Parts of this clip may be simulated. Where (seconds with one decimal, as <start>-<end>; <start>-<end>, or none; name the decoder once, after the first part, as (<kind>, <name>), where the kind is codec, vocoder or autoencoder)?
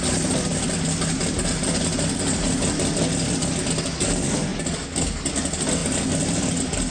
none